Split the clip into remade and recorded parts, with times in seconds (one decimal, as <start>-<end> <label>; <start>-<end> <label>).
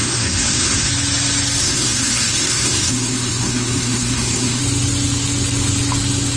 0.0-0.9 remade; 0.9-1.6 recorded; 1.6-4.6 remade; 4.6-6.4 recorded